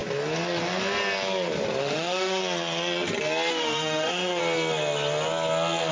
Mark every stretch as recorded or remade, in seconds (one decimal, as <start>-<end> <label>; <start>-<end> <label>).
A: 0.0-1.8 recorded; 1.8-2.4 remade; 2.4-3.5 recorded; 3.5-4.4 remade; 4.4-5.9 recorded